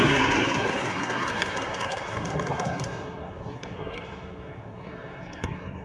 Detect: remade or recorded remade